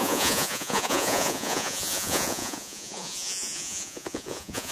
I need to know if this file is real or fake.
fake